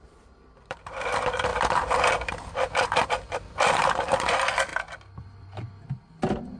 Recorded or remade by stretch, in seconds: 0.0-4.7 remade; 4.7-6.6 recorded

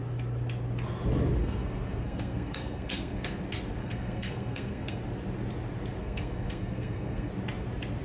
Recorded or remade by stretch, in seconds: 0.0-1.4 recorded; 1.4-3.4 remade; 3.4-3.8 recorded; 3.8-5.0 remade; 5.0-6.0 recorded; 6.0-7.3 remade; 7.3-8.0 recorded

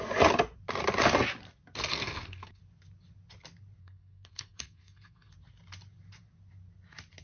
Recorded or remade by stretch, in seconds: 0.0-1.9 recorded; 1.9-2.6 remade; 2.6-3.8 recorded; 3.8-5.3 remade; 5.3-7.2 recorded

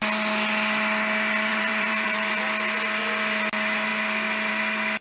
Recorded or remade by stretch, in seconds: 0.0-1.5 recorded; 1.5-2.4 remade; 2.4-5.0 recorded